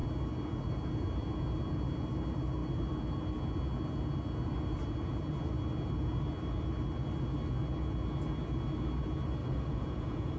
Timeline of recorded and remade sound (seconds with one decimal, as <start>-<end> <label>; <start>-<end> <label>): 0.0-9.4 recorded; 9.4-10.4 remade